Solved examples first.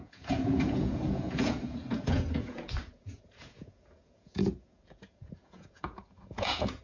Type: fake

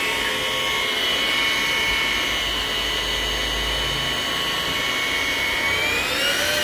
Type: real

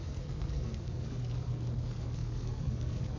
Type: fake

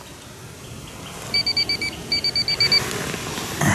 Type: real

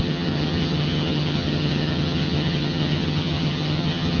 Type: fake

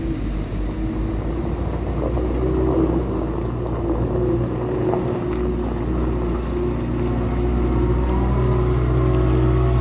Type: real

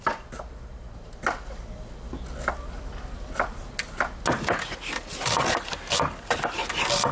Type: real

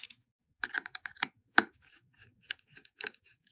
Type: fake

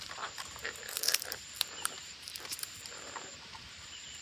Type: fake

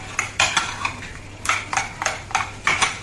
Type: real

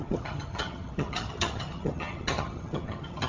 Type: fake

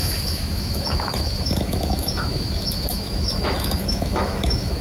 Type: fake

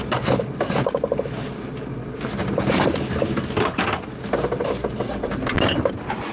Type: real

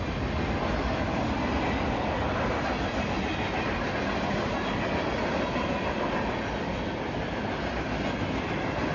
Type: real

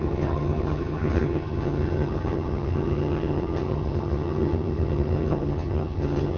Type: fake